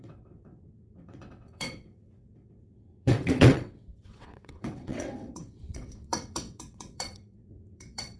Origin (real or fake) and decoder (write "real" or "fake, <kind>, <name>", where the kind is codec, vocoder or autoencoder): fake, vocoder, WaveNeXt